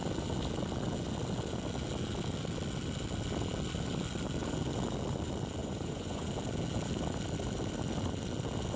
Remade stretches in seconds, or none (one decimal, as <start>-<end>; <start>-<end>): 5.6-6.3